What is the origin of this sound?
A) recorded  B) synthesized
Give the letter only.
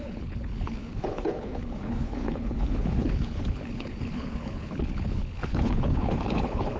B